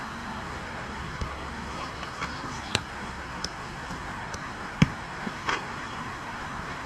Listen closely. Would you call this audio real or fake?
fake